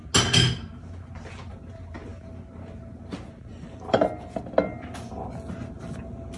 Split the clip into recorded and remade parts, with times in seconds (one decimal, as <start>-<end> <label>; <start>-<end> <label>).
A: 0.0-6.4 recorded